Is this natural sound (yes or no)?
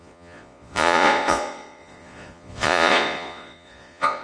no